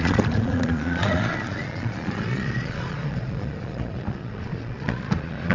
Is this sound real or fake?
fake